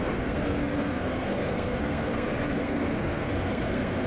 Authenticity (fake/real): fake